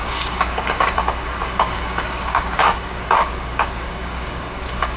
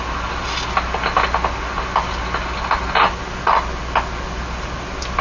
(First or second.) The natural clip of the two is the second